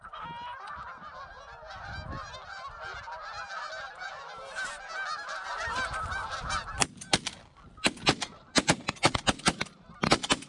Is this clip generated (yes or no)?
no